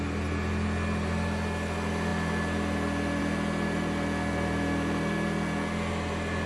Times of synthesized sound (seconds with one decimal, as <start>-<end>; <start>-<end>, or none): none